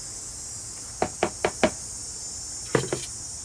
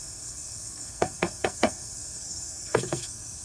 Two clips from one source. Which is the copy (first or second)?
second